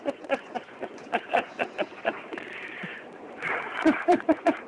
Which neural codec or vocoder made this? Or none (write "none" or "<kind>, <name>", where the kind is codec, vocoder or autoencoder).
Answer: vocoder, Vocos